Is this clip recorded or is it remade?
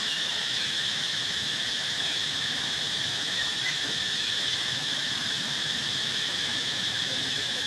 remade